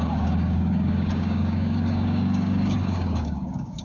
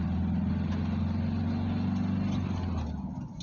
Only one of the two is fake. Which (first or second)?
first